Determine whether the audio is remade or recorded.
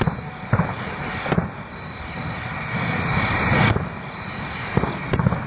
recorded